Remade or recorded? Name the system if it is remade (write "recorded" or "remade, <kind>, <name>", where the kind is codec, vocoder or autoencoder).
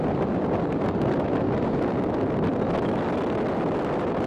recorded